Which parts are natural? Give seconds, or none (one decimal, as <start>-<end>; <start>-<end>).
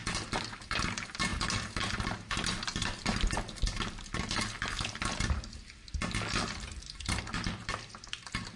0.0-8.6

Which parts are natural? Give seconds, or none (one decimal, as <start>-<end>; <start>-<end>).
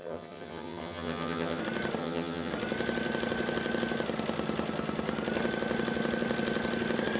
1.6-2.0; 2.5-7.2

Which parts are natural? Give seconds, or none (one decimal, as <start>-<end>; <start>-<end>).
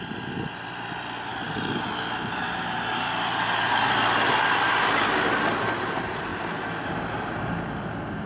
0.0-8.3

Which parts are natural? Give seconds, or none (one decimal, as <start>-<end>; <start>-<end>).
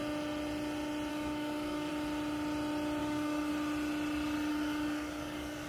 0.0-1.1; 1.9-3.0; 3.5-4.5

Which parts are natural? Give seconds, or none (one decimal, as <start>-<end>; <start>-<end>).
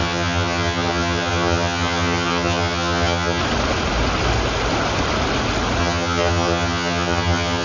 3.4-5.8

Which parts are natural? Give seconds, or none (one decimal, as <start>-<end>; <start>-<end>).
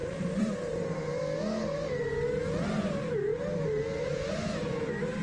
1.2-3.3; 4.7-5.2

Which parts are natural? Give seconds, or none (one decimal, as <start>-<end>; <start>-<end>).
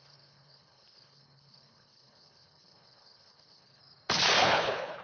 3.8-4.4